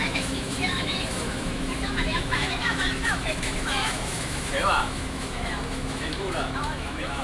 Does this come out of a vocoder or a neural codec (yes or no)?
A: yes